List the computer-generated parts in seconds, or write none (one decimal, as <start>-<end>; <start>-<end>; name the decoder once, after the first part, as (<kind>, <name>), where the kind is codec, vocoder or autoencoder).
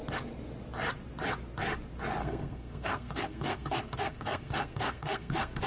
2.2-5.7 (codec, SNAC)